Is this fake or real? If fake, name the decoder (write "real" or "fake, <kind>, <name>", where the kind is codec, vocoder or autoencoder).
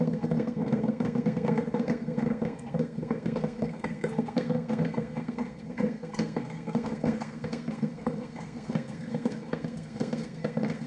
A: fake, codec, SNAC